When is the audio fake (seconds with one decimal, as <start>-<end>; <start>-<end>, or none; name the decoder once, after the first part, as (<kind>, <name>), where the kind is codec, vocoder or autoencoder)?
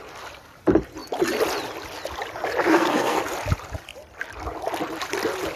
2.7-3.2 (codec, SNAC)